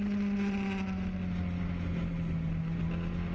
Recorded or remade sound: recorded